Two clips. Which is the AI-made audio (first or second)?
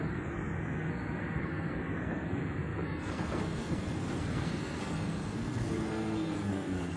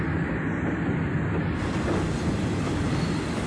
first